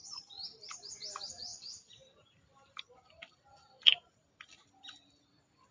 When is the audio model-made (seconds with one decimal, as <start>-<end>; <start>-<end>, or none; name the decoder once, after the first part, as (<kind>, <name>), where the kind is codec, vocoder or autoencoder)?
1.5-4.7 (vocoder, BigVGAN v2)